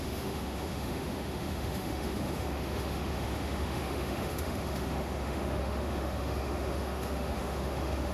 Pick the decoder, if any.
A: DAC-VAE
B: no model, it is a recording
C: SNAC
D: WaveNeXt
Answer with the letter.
A